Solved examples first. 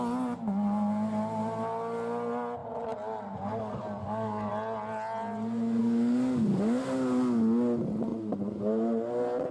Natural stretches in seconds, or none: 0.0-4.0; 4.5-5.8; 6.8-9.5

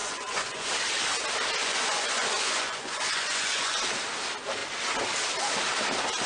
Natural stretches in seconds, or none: 0.7-1.6; 3.8-6.3

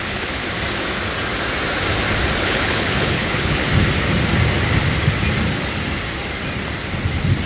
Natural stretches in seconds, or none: 0.4-2.4; 3.6-7.5

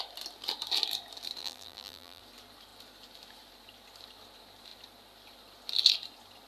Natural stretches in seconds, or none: 0.0-1.4; 2.2-6.5

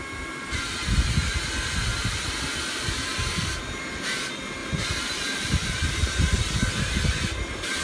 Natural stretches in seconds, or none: 0.0-1.9; 3.5-4.6; 5.9-7.8

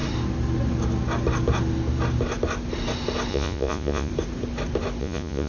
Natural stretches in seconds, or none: 0.0-3.3; 4.1-5.0